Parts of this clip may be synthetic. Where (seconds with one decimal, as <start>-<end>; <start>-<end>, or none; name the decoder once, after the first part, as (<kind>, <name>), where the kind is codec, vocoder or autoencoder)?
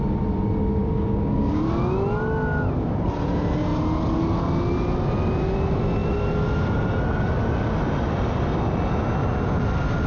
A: 0.8-1.6 (codec, DAC)